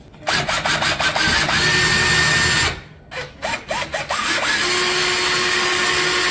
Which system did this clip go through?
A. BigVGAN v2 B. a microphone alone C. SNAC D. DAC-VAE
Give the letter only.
B